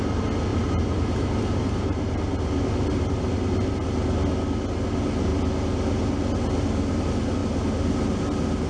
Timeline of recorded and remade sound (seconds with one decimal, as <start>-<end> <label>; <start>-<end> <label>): 0.0-0.5 recorded; 0.5-3.7 remade; 3.7-8.7 recorded